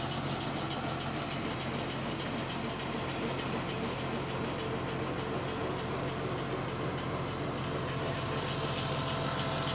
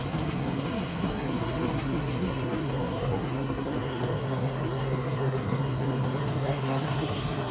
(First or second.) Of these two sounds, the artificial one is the second